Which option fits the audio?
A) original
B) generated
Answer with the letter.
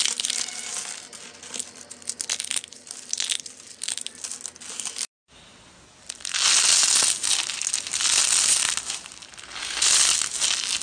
A